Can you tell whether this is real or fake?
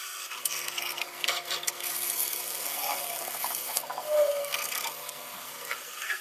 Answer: fake